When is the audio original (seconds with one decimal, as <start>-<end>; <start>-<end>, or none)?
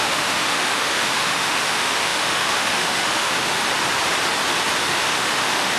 3.6-4.8